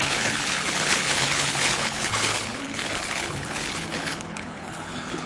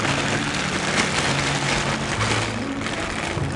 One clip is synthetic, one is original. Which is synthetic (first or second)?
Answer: first